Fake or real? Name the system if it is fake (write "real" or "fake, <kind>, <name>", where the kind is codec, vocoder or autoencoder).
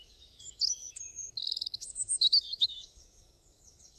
fake, codec, DAC